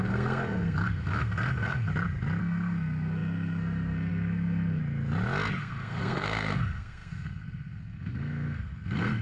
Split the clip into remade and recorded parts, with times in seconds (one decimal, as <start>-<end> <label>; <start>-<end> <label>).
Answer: 0.0-1.9 remade; 1.9-2.4 recorded; 2.4-4.8 remade; 4.8-5.6 recorded; 5.6-9.2 remade